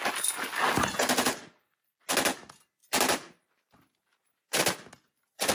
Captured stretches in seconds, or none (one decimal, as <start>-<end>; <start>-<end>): 0.0-2.8; 4.6-5.5